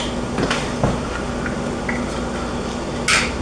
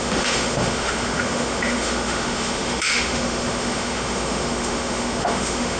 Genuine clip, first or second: first